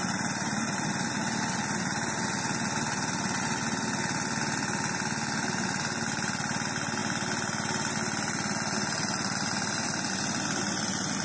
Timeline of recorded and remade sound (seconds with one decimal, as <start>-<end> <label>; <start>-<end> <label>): 0.0-11.2 recorded